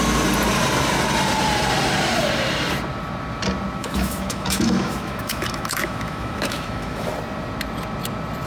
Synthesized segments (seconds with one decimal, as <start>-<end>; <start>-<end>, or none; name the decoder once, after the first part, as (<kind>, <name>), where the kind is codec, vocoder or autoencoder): 3.8-7.1 (autoencoder, DAC-VAE)